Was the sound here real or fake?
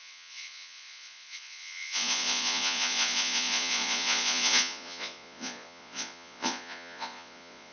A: fake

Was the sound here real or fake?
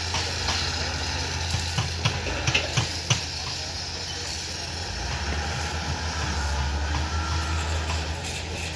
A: real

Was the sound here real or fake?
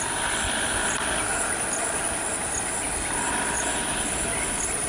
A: real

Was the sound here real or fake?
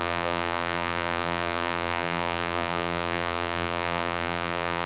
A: fake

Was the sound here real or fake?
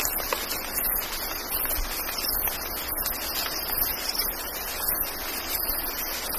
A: real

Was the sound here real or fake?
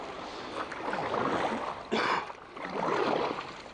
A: real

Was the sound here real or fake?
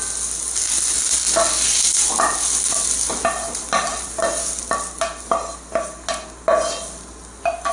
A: real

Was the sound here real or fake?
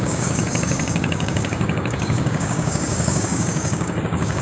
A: fake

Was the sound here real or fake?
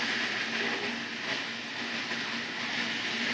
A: real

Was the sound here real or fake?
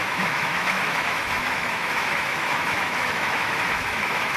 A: fake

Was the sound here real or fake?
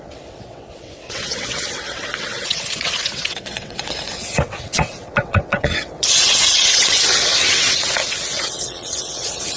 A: fake